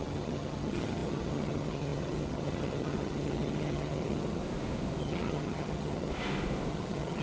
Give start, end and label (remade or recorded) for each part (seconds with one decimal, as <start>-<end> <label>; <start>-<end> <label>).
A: 0.0-4.4 remade; 4.4-5.0 recorded; 5.0-6.1 remade; 6.1-6.7 recorded; 6.7-7.2 remade